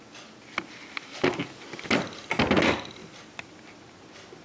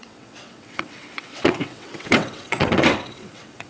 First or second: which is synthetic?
second